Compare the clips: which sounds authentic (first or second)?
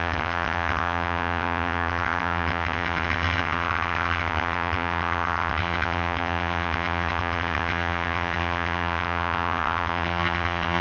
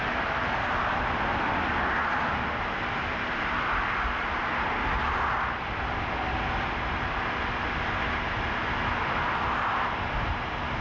second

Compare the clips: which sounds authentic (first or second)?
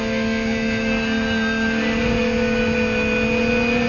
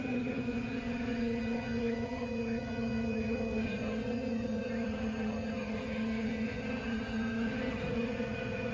first